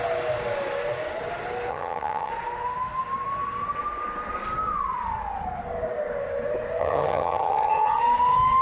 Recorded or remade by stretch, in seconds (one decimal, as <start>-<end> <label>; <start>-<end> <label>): 0.0-1.7 recorded; 1.7-2.3 remade; 2.3-6.8 recorded; 6.8-8.0 remade; 8.0-8.6 recorded